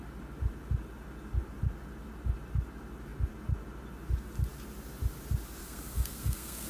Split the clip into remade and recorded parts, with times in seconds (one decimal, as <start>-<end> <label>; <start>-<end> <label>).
0.0-5.6 recorded; 5.6-6.7 remade